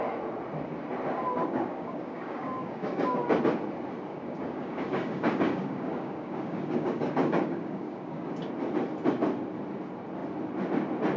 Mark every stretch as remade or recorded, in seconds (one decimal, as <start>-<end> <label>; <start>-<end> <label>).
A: 0.0-1.4 recorded; 1.4-3.4 remade; 3.4-4.1 recorded; 4.1-8.3 remade; 8.3-11.2 recorded